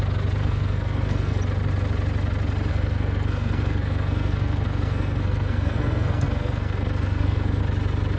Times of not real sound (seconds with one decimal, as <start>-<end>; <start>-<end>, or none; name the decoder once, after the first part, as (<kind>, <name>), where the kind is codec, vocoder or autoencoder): 0.4-1.4 (codec, SNAC); 2.7-7.6